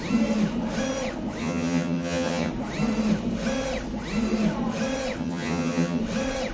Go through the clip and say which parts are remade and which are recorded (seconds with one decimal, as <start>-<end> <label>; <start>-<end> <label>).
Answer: 0.0-1.4 recorded; 1.4-2.5 remade; 2.5-5.2 recorded; 5.2-6.0 remade; 6.0-6.5 recorded